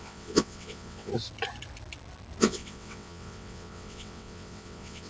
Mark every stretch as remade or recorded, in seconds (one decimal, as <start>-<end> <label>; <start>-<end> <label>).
0.0-1.1 remade; 1.1-2.4 recorded; 2.4-5.1 remade